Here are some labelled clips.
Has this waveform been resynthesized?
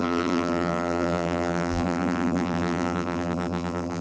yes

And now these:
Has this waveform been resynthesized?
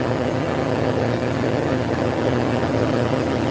yes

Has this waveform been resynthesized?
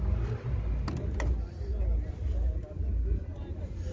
no